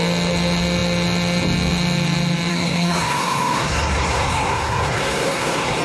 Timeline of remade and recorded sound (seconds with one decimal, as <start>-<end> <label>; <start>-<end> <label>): 0.0-2.5 recorded; 2.5-5.8 remade